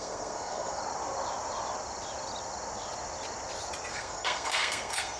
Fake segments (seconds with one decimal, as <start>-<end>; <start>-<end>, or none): 0.0-0.8; 3.9-5.2